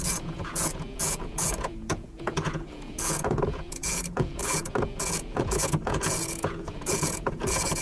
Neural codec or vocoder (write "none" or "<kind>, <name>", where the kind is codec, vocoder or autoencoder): vocoder, Vocos